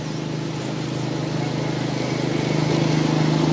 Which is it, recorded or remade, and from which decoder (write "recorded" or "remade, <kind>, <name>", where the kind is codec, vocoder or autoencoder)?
recorded